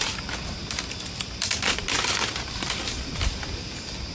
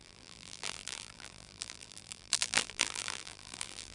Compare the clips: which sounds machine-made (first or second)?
second